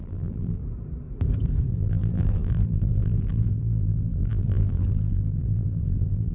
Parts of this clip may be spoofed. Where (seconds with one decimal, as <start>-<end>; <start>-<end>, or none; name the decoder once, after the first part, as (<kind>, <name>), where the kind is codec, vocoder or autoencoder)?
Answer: 0.0-0.6 (vocoder, BigVGAN v2); 1.7-6.3